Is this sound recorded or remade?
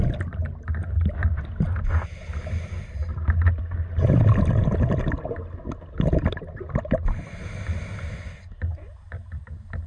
recorded